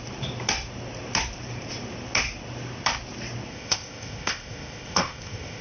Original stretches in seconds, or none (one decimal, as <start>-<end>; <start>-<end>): 0.0-3.5